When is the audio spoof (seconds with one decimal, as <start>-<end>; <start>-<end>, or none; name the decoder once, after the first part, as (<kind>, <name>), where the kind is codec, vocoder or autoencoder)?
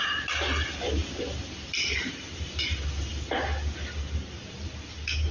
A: none